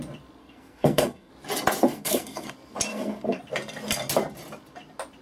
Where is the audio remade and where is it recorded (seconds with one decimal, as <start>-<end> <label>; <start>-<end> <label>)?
0.0-0.4 recorded; 0.4-1.3 remade; 1.3-1.8 recorded; 1.8-2.5 remade; 2.5-2.9 recorded; 2.9-3.4 remade; 3.4-5.2 recorded